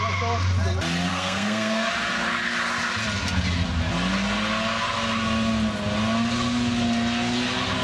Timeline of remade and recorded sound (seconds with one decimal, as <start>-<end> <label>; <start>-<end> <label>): 0.0-1.1 recorded; 1.1-1.9 remade; 1.9-7.8 recorded